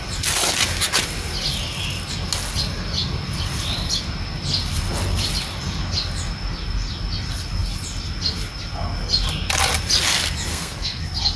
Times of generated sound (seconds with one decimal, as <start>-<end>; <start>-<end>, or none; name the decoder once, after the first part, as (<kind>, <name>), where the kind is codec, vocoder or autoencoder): 10.5-11.0 (codec, SNAC)